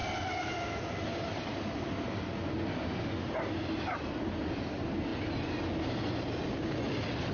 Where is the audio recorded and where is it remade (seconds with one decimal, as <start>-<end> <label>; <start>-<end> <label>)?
0.0-7.3 recorded